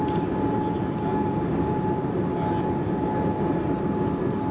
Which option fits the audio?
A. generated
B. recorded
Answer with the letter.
B